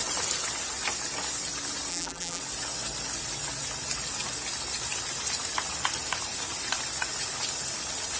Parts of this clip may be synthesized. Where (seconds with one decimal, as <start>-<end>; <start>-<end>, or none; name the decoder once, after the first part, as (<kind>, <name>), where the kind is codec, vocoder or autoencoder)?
1.9-2.4 (vocoder, BigVGAN v2)